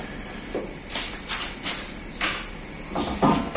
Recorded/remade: recorded